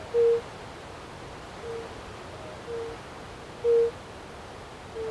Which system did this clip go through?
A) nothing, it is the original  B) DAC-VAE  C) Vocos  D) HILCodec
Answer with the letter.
A